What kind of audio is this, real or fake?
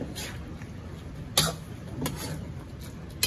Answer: real